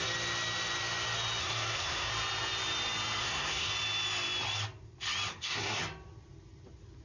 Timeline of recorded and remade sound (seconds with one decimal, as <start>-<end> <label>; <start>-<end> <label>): 0.0-1.4 recorded; 1.4-2.1 remade; 2.1-3.2 recorded; 3.2-3.7 remade; 3.7-5.3 recorded; 5.3-5.8 remade; 5.8-7.0 recorded